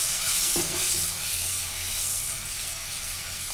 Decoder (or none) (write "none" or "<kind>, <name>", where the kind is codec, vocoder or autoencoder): codec, SNAC